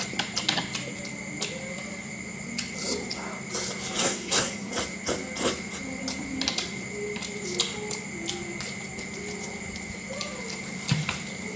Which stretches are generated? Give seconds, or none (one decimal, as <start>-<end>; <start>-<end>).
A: 4.0-4.7